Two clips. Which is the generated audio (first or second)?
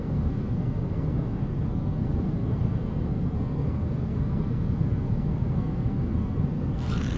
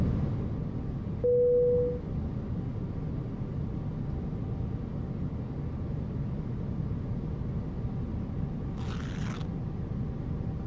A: first